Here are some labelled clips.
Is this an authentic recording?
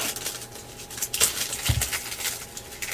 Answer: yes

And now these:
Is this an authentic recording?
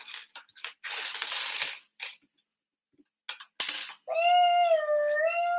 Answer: yes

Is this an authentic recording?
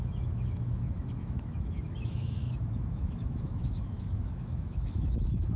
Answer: no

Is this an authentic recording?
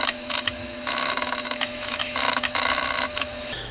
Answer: no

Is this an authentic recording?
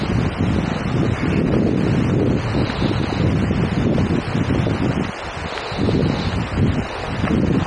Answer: yes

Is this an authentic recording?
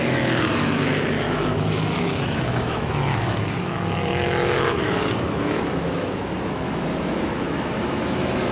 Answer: no